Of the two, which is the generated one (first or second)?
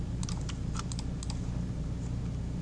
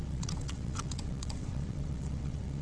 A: second